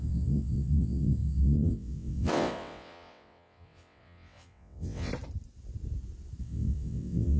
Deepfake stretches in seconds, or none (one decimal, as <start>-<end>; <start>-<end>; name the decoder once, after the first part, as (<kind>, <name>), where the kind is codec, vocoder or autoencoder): 0.0-5.1 (vocoder, WaveNeXt); 6.4-7.4